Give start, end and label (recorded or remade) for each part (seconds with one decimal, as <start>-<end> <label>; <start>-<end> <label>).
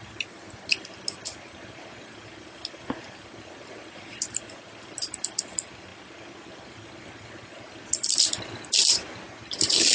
0.0-9.9 recorded